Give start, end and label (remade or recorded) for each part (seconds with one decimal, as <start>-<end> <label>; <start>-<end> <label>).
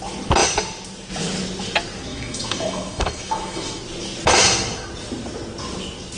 0.0-2.1 recorded; 2.1-3.8 remade; 3.8-6.2 recorded